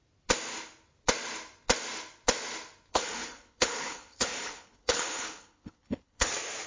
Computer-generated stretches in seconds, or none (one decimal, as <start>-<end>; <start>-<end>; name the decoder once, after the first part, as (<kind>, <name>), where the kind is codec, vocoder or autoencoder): 2.9-6.3 (codec, HILCodec)